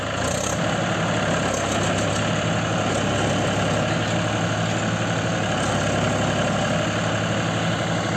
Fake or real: real